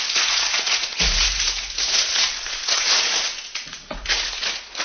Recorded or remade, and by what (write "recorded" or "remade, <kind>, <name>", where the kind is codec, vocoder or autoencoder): remade, vocoder, Vocos